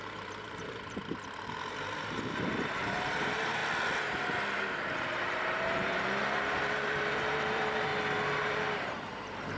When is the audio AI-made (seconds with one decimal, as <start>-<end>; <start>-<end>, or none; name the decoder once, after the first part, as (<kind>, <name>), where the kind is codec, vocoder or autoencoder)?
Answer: 0.0-3.6 (vocoder, BigVGAN v2); 4.8-7.9; 8.4-9.6